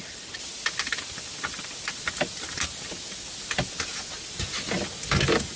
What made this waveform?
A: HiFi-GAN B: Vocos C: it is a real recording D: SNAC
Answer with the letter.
C